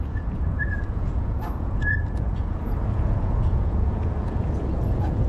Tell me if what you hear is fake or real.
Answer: fake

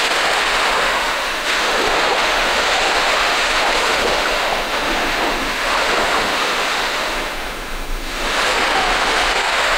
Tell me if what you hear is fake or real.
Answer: fake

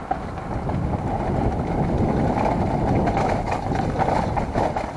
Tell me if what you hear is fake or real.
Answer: real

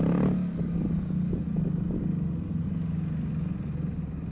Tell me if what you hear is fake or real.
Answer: real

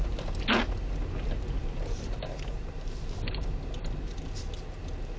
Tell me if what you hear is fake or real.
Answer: real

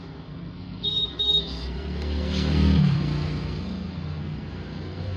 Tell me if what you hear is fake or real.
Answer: fake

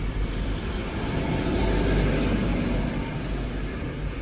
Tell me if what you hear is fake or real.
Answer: real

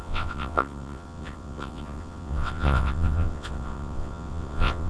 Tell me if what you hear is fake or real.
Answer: fake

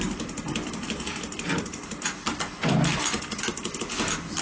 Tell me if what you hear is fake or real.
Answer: real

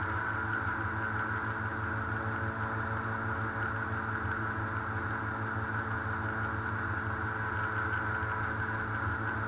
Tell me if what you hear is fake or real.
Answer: real